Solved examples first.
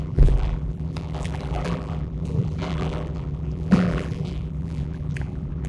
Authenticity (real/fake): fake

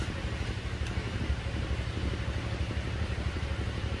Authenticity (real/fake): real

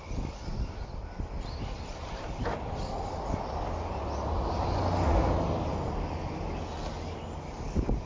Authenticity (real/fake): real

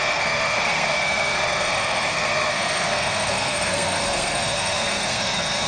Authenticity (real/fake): fake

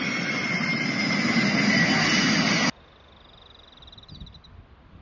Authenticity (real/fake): real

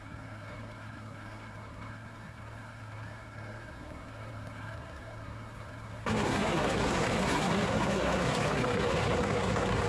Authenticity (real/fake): fake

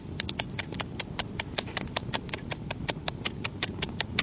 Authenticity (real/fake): real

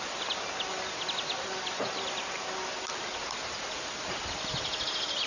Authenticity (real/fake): real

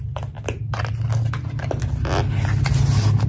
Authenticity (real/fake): real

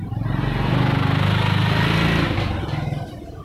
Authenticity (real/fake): real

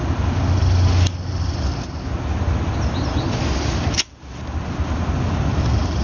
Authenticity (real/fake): real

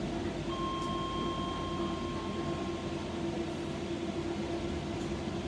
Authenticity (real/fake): real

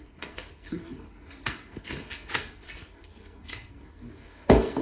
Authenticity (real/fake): fake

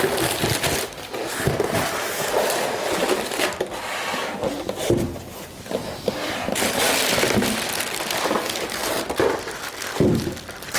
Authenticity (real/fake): real